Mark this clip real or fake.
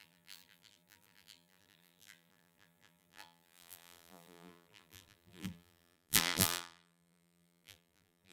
fake